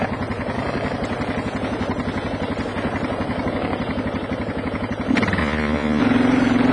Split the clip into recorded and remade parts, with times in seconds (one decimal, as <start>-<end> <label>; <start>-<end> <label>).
0.0-5.4 recorded; 5.4-6.0 remade; 6.0-6.7 recorded